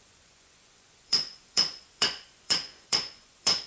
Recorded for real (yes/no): no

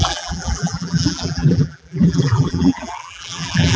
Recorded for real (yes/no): no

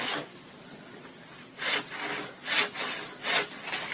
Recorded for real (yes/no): yes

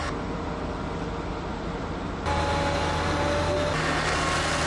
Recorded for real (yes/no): yes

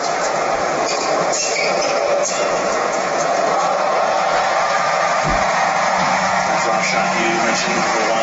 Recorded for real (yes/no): no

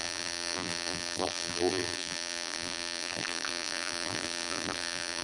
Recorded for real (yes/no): no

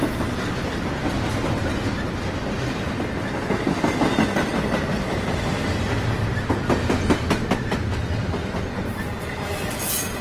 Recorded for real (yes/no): yes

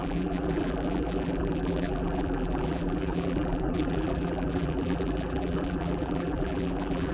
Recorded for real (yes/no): no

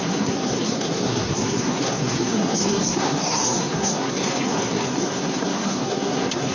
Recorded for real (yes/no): no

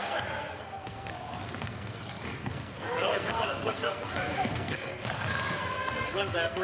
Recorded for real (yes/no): no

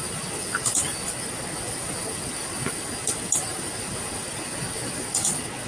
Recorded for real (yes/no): yes